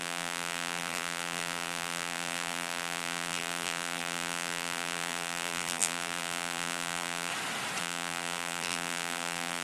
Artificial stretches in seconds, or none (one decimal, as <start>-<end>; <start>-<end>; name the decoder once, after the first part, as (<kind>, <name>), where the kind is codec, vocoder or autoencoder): 0.0-7.3 (vocoder, BigVGAN v2); 7.8-9.6